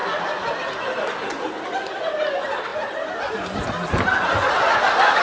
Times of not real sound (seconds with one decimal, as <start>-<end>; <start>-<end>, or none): none